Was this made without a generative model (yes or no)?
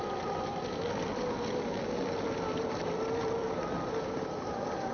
yes